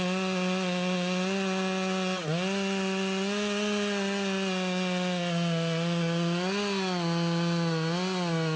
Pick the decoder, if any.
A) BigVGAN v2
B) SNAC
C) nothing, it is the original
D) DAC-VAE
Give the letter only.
C